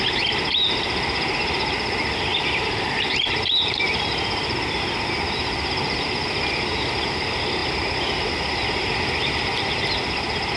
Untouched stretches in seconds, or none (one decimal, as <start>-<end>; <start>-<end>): 0.0-2.3; 4.0-10.6